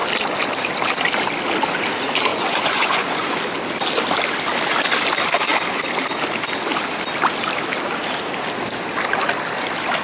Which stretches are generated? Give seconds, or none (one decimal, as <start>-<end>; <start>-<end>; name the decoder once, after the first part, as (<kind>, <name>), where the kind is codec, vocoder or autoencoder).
2.3-3.4 (vocoder, Vocos)